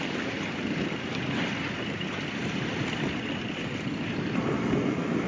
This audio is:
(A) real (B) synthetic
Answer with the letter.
B